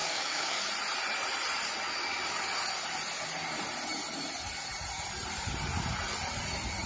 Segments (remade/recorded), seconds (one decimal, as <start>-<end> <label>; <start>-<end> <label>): 0.0-0.6 remade; 0.6-6.9 recorded